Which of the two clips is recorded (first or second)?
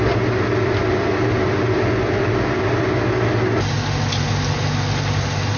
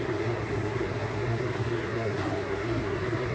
first